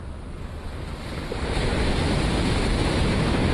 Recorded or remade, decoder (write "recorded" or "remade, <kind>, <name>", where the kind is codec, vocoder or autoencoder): remade, vocoder, BigVGAN v2